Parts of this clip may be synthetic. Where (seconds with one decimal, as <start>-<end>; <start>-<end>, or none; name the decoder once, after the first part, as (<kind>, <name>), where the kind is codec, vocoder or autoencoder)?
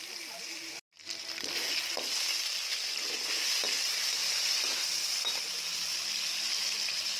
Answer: 0.0-1.0 (vocoder, BigVGAN v2); 1.7-7.2